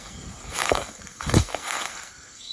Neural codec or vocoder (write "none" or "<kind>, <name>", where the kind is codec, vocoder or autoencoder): codec, SNAC